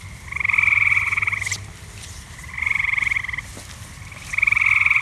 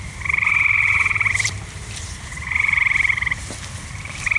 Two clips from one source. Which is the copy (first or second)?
second